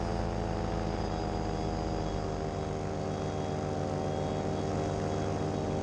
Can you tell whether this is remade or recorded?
recorded